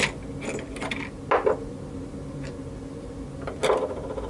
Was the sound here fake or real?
real